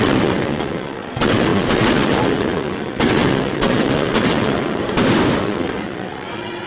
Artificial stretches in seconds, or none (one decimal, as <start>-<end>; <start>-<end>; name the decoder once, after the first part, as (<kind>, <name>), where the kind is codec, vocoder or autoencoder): 0.0-4.8 (vocoder, WaveNeXt); 5.4-6.7